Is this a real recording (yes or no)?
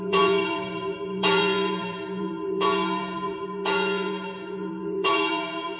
no